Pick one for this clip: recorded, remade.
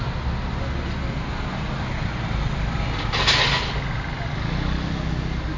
recorded